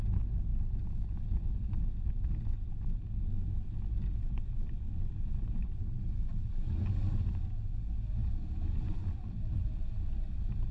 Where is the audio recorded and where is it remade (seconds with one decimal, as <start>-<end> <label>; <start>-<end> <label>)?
0.0-10.7 recorded